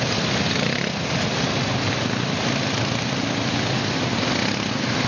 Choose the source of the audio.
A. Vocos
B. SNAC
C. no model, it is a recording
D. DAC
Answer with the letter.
C